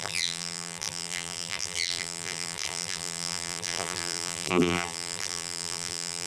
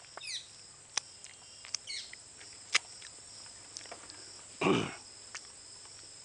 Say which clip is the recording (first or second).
second